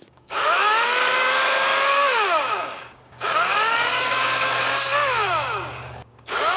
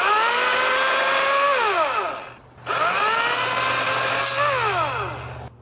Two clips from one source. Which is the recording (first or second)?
second